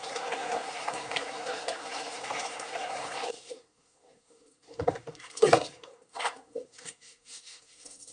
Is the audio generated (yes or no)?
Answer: yes